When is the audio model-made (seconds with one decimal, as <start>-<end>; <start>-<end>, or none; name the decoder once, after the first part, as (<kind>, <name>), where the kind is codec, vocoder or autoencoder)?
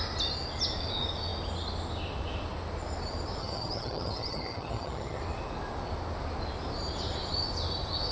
3.4-5.2 (vocoder, HiFi-GAN)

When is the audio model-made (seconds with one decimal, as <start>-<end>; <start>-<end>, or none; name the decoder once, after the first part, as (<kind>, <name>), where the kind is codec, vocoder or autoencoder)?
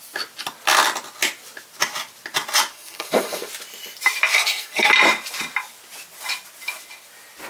2.7-3.5 (codec, SNAC); 4.3-4.9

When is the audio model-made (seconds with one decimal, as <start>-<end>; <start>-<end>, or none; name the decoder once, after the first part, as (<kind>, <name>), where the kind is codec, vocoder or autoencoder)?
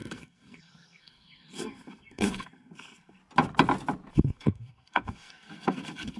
0.0-3.2 (codec, SNAC); 4.1-6.2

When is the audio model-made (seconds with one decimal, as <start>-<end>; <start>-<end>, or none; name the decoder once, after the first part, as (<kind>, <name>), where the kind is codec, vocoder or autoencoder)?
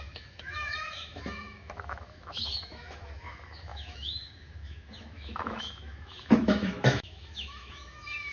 0.0-8.3 (autoencoder, DAC-VAE)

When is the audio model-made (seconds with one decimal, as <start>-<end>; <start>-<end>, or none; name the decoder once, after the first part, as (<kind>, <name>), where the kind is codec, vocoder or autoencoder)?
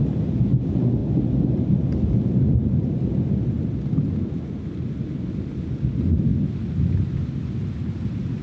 none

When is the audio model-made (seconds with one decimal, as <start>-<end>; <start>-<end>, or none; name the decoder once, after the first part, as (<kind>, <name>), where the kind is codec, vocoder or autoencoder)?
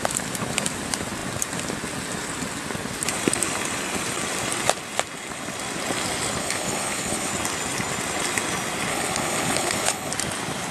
6.4-7.3 (codec, HILCodec); 8.9-10.1